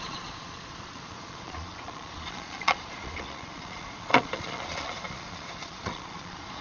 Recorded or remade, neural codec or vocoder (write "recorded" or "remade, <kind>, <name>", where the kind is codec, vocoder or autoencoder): remade, vocoder, Vocos